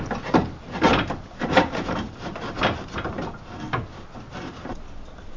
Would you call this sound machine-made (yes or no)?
no